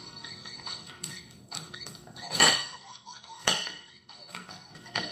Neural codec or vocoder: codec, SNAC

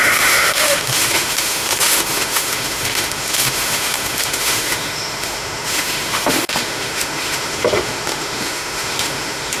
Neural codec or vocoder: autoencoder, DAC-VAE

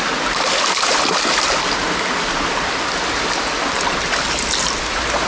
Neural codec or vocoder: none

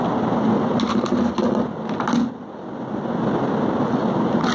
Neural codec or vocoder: none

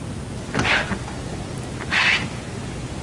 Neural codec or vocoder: none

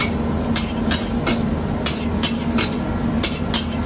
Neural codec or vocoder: none